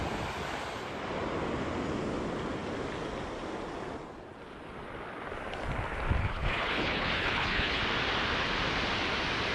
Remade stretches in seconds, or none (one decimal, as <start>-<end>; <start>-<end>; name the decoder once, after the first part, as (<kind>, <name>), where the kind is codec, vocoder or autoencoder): 6.2-7.8 (codec, HILCodec)